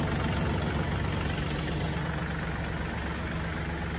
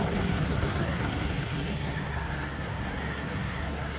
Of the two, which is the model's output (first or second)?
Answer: second